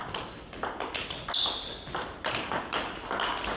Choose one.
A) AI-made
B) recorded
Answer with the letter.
B